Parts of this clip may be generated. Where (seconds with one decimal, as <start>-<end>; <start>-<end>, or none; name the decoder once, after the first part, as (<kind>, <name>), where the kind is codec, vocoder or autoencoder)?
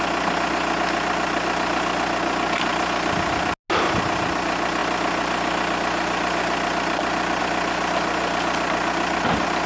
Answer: none